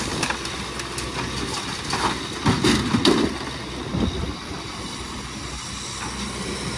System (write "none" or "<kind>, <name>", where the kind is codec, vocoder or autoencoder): none